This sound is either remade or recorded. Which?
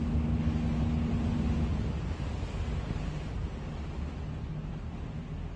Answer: recorded